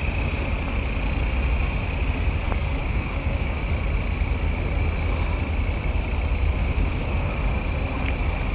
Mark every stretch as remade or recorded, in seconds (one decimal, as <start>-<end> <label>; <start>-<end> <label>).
0.0-2.8 recorded; 2.8-3.6 remade; 3.6-6.6 recorded; 6.6-7.3 remade; 7.3-8.5 recorded